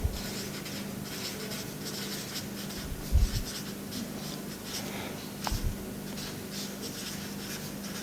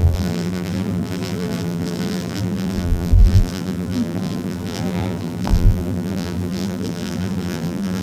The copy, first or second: second